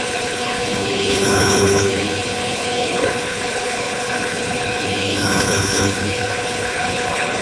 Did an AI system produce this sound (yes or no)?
yes